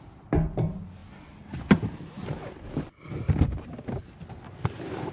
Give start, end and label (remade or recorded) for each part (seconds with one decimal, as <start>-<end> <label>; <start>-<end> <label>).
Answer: 0.0-5.1 recorded